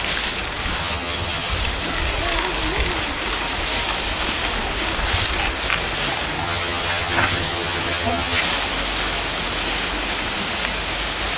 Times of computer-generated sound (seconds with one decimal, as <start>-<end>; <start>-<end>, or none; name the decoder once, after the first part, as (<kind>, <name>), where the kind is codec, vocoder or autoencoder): 0.8-1.5 (vocoder, HiFi-GAN); 6.4-8.4